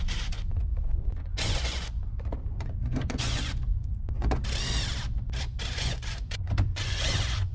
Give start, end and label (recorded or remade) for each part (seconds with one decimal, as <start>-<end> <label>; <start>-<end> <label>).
0.0-4.4 remade; 4.4-5.7 recorded; 5.7-7.5 remade